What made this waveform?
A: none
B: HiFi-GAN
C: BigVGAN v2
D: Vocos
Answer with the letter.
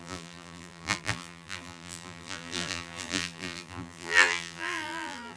C